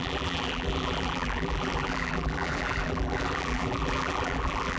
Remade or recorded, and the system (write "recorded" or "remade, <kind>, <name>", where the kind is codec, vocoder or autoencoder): remade, vocoder, BigVGAN v2